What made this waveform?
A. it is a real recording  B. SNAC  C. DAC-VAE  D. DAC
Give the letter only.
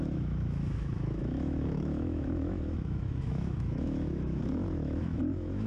C